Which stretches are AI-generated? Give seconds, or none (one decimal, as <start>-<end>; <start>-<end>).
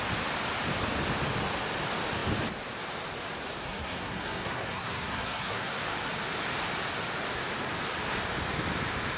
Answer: 3.6-5.8